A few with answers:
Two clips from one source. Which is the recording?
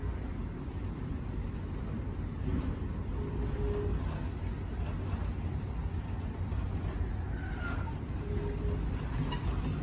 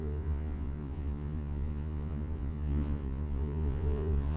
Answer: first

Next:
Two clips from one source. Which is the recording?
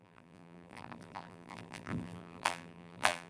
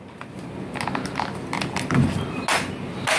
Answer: second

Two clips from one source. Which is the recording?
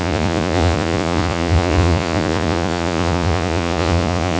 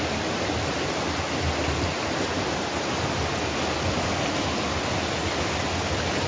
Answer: second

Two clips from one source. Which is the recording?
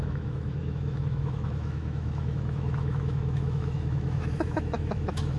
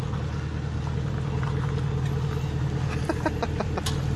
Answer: second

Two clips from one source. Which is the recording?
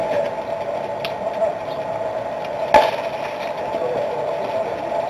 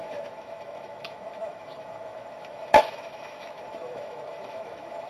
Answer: first